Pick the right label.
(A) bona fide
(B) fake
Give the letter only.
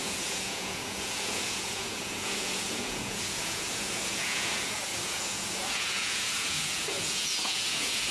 B